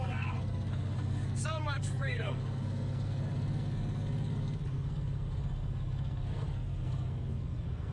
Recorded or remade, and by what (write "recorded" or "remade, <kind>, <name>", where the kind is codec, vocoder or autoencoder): remade, codec, SNAC